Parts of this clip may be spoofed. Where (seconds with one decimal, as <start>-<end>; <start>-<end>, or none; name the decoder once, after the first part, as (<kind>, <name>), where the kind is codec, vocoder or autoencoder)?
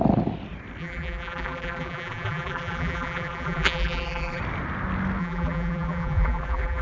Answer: 0.8-4.4 (vocoder, BigVGAN v2); 5.2-6.8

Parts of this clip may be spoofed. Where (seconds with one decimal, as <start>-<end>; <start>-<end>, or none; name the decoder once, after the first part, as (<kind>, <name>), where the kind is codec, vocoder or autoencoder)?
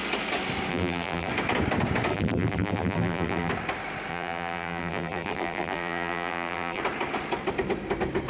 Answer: 0.7-1.3 (vocoder, BigVGAN v2); 2.1-3.5; 4.1-6.8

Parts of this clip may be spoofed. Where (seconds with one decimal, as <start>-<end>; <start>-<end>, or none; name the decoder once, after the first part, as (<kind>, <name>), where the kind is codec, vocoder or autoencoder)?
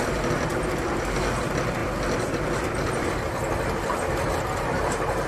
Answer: none